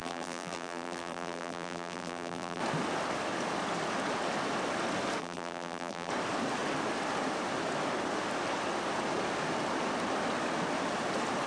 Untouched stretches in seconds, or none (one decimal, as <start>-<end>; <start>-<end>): 2.6-5.2; 6.1-11.5